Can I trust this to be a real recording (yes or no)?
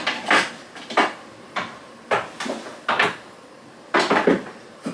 yes